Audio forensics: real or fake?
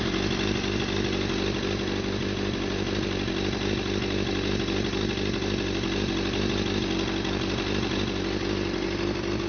real